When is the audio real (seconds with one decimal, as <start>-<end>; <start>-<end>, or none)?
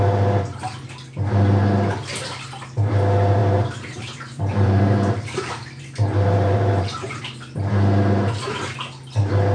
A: 0.0-3.4; 7.2-9.5